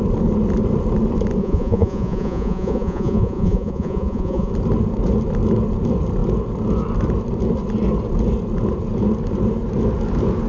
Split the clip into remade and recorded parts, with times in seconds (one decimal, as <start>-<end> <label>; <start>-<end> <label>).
0.0-1.4 recorded; 1.4-4.5 remade; 4.5-10.5 recorded